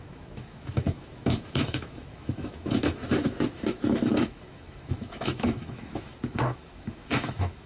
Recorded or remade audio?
remade